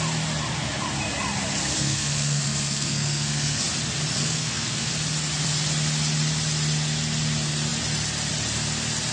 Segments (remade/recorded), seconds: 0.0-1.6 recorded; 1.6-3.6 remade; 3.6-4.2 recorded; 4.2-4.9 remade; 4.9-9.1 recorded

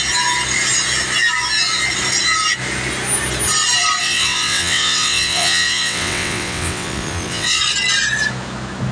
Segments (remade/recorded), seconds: 0.0-4.0 recorded; 4.0-7.6 remade; 7.6-8.9 recorded

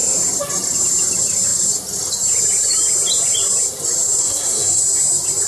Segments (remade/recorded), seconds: 0.0-4.2 recorded; 4.2-4.8 remade; 4.8-5.5 recorded

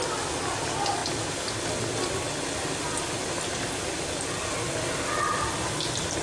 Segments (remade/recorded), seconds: 0.0-6.2 recorded

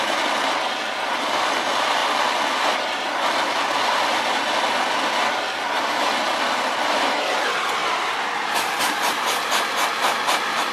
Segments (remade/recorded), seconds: 0.0-2.0 remade; 2.0-5.1 recorded; 5.1-10.7 remade

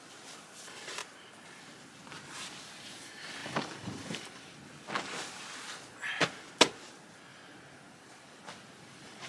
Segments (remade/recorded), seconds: 0.0-3.4 recorded; 3.4-4.6 remade; 4.6-7.3 recorded; 7.3-9.3 remade

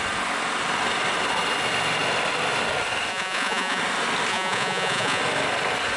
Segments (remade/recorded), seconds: 0.0-3.1 recorded; 3.1-3.8 remade; 3.8-4.3 recorded; 4.3-5.2 remade; 5.2-6.0 recorded